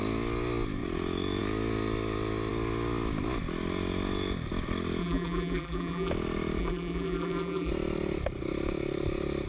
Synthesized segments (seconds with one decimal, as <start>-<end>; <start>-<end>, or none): 5.0-6.1; 6.6-7.7